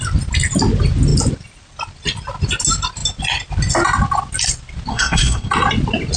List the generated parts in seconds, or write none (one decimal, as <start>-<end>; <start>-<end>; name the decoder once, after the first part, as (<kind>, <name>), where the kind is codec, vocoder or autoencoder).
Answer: 4.9-5.5 (codec, SNAC)